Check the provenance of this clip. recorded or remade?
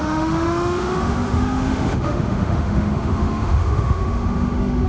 remade